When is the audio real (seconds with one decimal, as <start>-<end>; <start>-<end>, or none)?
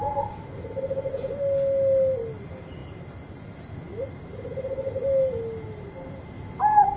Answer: 0.0-7.0